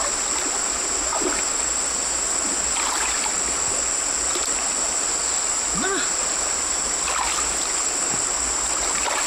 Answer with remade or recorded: recorded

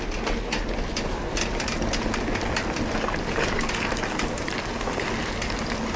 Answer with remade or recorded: recorded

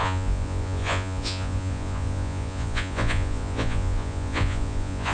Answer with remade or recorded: remade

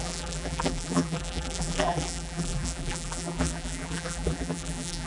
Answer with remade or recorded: remade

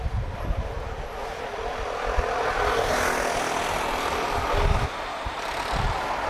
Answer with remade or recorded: recorded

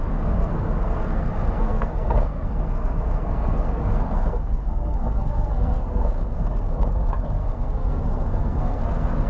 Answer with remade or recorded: remade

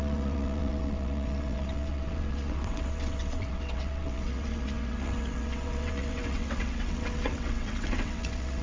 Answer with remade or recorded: remade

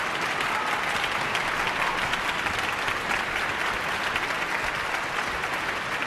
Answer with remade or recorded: recorded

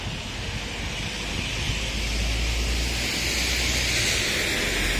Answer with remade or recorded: recorded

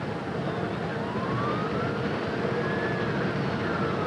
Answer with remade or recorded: recorded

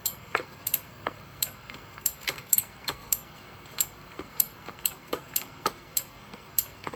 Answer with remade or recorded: remade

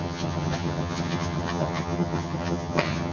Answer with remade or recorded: remade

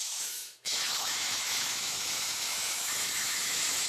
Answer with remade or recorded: remade